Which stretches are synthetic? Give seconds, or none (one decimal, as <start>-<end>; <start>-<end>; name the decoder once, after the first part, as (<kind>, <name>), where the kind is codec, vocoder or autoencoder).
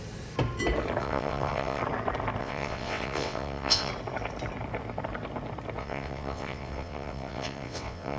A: 1.0-1.8 (vocoder, WaveNeXt); 2.4-3.9; 5.8-8.2